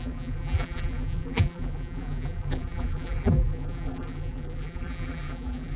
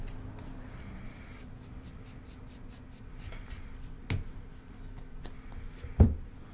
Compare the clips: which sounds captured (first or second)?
second